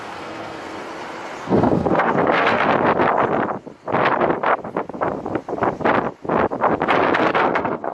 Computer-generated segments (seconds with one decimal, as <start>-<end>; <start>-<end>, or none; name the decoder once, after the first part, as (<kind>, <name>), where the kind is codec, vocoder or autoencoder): 0.0-0.8 (codec, SNAC); 1.4-2.6; 7.3-7.9